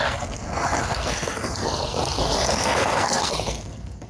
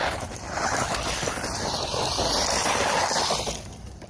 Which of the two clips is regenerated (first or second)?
first